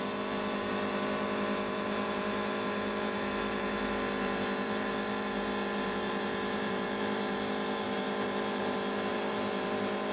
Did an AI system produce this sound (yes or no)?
yes